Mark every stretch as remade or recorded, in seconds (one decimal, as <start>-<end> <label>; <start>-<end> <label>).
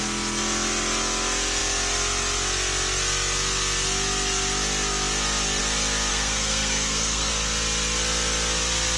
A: 0.0-6.1 recorded; 6.1-7.3 remade; 7.3-9.0 recorded